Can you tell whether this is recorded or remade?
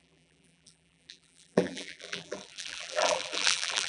remade